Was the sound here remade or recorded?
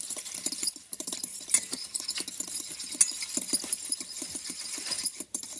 recorded